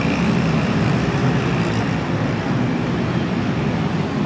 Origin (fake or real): real